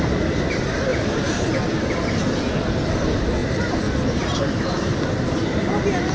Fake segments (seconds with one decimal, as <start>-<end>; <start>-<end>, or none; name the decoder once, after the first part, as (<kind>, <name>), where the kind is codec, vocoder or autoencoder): 0.9-1.5 (vocoder, BigVGAN v2); 3.4-4.5

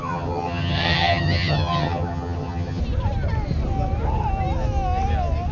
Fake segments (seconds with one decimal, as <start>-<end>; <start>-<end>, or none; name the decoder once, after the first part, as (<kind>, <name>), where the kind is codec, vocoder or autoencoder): 0.0-2.8 (vocoder, HiFi-GAN)

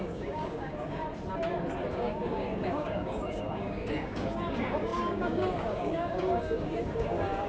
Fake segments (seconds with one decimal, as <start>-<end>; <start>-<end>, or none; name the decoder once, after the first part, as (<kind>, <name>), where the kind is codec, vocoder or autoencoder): 0.0-1.0 (codec, DAC); 1.9-7.5

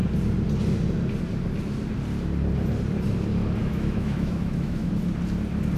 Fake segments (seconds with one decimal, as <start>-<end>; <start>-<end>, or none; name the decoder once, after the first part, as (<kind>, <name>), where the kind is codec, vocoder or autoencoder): 3.6-4.9 (autoencoder, DAC-VAE)

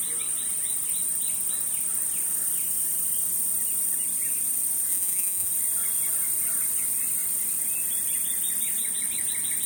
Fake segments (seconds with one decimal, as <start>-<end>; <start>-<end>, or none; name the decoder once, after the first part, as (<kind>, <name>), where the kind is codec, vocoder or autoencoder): 4.9-5.5 (vocoder, Vocos)